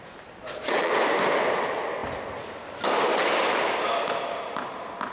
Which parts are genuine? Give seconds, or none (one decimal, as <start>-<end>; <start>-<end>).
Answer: 0.0-0.4; 0.9-5.1